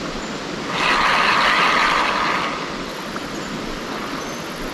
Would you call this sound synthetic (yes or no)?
no